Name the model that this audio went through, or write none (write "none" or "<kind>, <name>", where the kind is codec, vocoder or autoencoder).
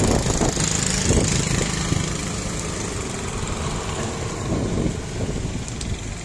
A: none